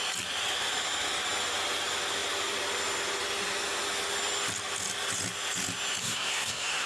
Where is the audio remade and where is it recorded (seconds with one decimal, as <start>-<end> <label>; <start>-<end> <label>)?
0.0-6.0 recorded; 6.0-6.9 remade